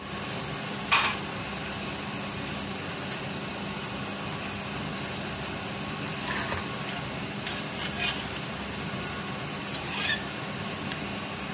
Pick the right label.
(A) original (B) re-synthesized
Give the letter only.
A